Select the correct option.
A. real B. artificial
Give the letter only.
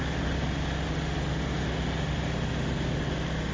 A